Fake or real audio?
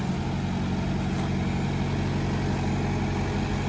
real